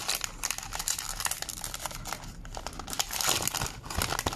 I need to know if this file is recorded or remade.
recorded